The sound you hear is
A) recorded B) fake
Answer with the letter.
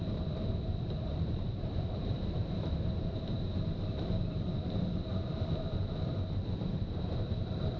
B